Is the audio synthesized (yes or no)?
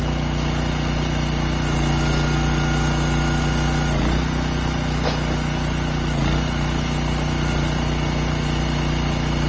no